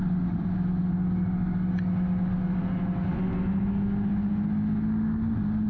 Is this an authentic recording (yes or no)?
yes